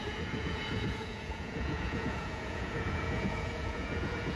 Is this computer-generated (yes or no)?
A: yes